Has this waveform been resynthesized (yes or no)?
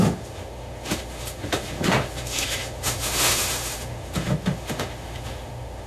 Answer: yes